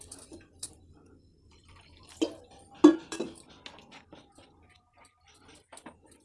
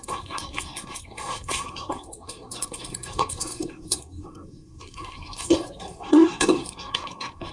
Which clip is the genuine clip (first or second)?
first